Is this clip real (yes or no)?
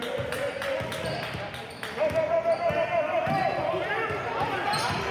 yes